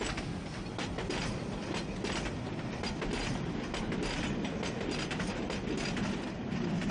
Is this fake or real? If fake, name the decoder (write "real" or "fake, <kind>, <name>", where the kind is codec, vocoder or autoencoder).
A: real